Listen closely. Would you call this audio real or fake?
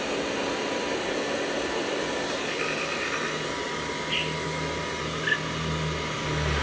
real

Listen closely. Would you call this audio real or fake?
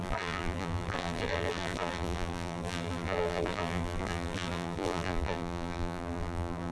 fake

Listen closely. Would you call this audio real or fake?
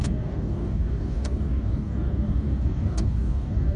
fake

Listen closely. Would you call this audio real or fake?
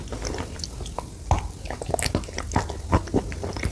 real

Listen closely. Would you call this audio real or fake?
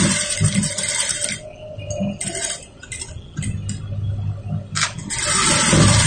real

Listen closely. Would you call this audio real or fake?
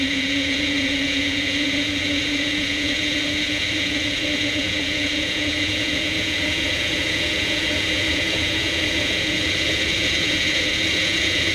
fake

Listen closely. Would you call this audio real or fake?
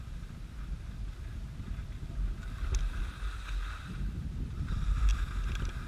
real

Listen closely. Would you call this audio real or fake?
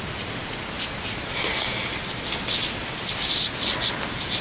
real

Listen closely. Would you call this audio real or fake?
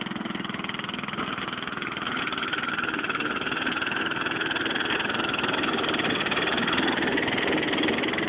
real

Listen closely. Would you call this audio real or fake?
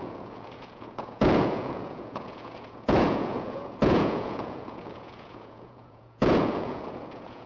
fake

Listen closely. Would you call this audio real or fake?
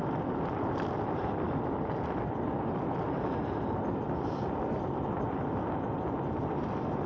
real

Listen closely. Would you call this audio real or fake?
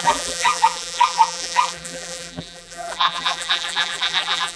fake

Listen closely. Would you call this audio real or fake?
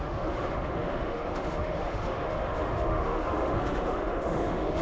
fake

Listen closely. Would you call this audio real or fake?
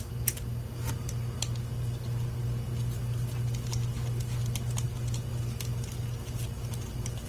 real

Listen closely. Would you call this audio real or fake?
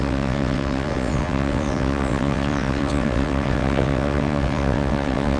fake